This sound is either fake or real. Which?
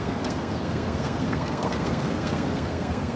fake